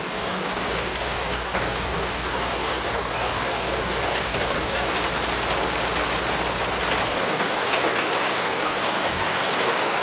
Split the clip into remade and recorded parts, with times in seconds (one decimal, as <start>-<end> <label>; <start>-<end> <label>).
0.0-5.0 remade; 5.0-7.0 recorded; 7.0-10.0 remade

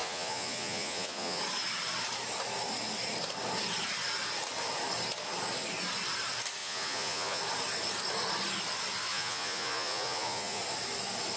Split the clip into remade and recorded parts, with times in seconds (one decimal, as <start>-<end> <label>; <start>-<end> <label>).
0.0-1.4 remade; 1.4-6.6 recorded; 6.6-7.4 remade; 7.4-9.1 recorded; 9.1-10.6 remade; 10.6-11.4 recorded